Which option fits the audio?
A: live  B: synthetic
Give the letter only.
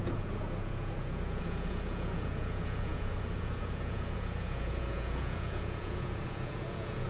B